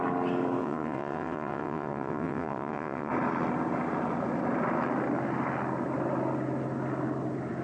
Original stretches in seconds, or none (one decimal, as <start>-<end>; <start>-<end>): 0.0-0.6; 3.1-7.6